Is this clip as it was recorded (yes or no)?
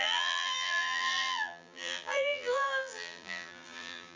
no